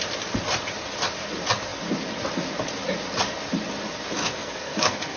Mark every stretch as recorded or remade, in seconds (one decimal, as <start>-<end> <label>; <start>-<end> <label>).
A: 0.0-4.2 recorded; 4.2-5.2 remade

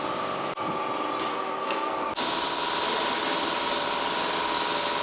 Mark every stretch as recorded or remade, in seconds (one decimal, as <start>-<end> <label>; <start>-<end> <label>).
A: 0.0-1.3 recorded; 1.3-2.1 remade; 2.1-5.0 recorded

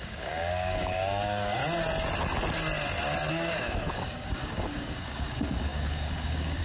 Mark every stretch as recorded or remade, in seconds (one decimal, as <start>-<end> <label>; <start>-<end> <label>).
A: 0.0-1.6 remade; 1.6-3.3 recorded; 3.3-6.6 remade

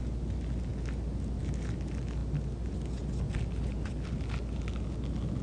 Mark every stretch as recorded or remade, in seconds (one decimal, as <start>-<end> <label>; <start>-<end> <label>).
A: 0.0-5.4 recorded

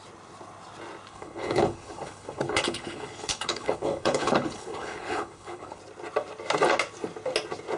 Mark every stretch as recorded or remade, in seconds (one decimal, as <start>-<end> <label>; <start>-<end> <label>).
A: 0.0-1.1 recorded; 1.1-5.8 remade; 5.8-7.8 recorded

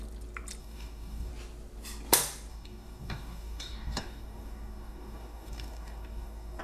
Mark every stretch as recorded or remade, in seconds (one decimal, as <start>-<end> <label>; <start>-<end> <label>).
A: 0.0-0.6 recorded; 0.6-1.3 remade; 1.3-2.5 recorded; 2.5-6.6 remade